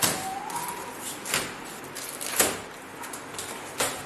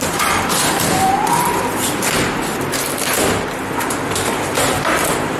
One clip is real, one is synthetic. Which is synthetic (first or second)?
second